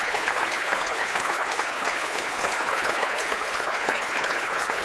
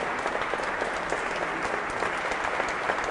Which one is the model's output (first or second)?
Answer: first